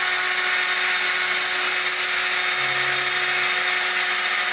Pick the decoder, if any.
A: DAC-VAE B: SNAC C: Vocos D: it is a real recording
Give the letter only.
D